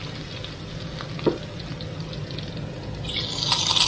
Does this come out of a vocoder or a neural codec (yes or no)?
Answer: no